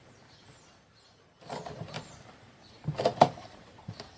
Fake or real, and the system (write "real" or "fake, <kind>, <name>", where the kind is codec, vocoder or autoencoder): fake, vocoder, BigVGAN v2